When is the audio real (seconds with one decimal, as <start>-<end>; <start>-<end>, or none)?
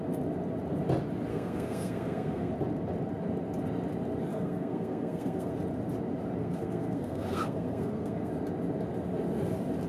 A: 0.0-1.3; 2.5-4.3; 5.5-6.4; 8.3-9.9